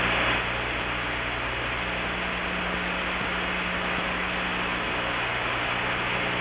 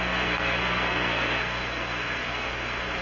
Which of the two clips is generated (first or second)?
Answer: second